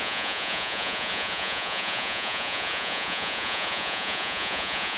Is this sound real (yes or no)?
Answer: no